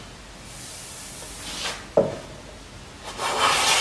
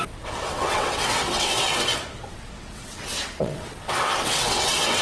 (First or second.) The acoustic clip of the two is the first